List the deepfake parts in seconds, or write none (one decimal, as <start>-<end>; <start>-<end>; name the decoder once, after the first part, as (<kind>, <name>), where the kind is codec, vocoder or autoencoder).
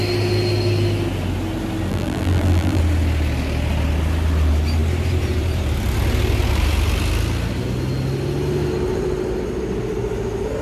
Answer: 1.9-2.8 (vocoder, BigVGAN v2)